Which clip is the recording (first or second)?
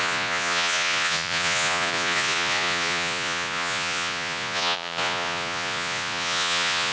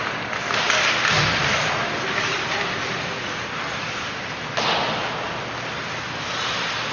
second